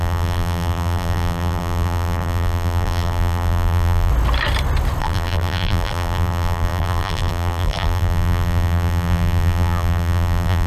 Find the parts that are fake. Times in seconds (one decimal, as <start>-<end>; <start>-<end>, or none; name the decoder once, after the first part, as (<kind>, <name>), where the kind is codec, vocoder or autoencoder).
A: 0.0-4.1 (vocoder, BigVGAN v2); 5.0-10.7